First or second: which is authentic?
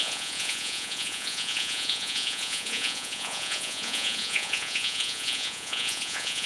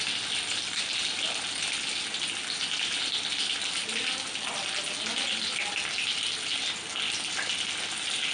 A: second